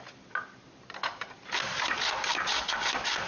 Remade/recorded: remade